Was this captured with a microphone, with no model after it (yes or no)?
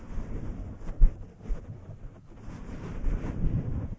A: yes